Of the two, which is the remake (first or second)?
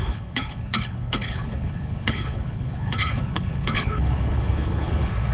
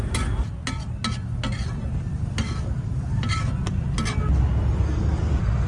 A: first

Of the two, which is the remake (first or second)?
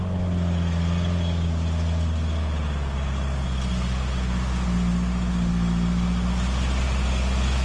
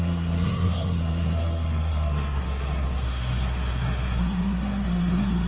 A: second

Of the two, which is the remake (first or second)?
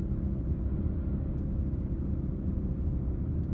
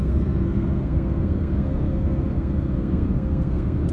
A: second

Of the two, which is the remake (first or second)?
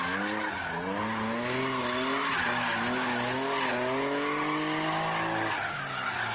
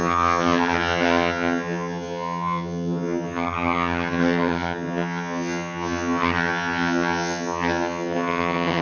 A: second